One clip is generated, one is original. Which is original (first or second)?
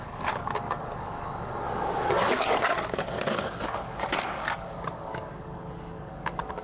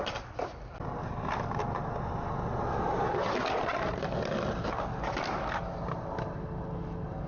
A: second